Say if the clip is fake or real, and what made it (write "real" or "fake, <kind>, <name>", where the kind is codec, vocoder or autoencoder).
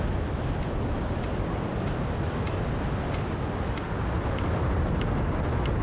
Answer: real